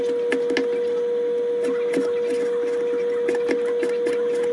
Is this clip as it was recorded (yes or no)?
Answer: yes